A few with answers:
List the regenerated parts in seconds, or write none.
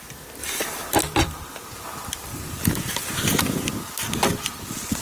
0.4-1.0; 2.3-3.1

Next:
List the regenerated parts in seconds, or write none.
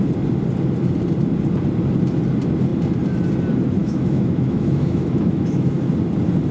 3.8-5.8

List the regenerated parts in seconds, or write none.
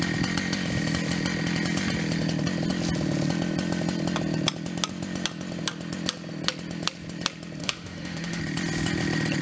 7.6-8.4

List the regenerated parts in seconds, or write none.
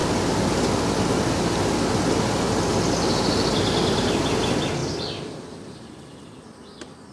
none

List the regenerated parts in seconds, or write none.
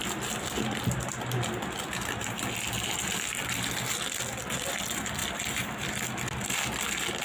5.2-5.9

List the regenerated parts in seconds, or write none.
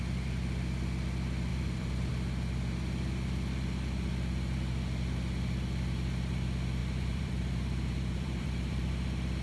1.5-2.1; 6.8-8.9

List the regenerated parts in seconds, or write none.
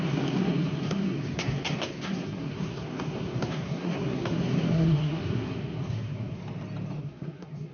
0.0-6.4; 7.0-7.7